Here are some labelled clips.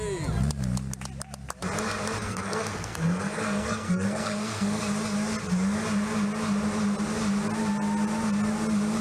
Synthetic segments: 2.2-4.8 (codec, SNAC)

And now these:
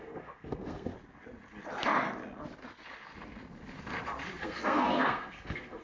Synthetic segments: 0.0-0.9 (codec, SNAC); 4.4-5.8

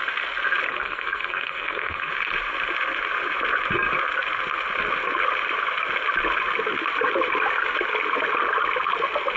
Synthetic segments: 0.7-2.1 (codec, SNAC)